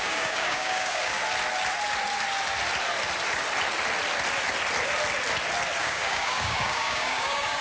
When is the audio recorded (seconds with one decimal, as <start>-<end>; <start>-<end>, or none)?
1.2-5.8